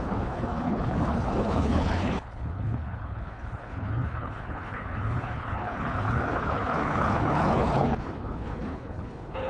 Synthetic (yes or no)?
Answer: yes